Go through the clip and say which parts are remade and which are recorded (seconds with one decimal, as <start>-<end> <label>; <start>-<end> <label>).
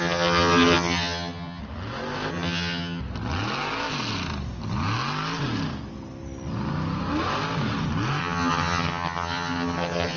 0.0-1.6 remade; 1.6-2.3 recorded; 2.3-3.0 remade; 3.0-8.2 recorded; 8.2-10.2 remade